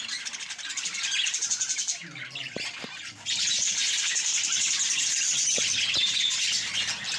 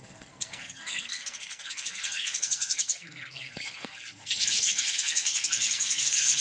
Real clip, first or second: first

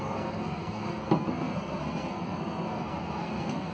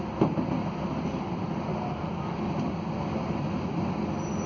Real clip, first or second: second